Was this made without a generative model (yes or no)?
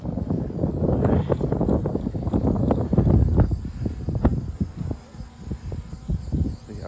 yes